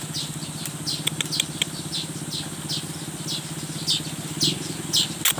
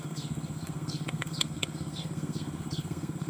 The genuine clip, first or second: first